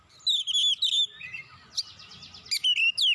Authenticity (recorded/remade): recorded